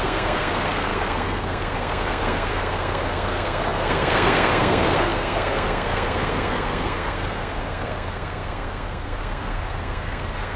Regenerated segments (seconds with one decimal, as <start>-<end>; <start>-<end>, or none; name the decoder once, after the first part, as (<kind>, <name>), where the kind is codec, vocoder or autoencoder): 0.0-10.6 (codec, SNAC)